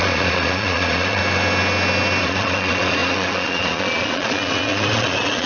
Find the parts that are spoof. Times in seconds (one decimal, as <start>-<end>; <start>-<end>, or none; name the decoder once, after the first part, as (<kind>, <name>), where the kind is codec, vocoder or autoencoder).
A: 0.0-1.2 (vocoder, Vocos); 2.2-5.5